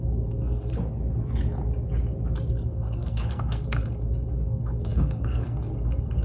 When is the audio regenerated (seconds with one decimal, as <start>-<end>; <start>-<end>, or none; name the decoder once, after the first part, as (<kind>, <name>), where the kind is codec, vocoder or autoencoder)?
0.0-0.7 (codec, SNAC); 2.5-6.2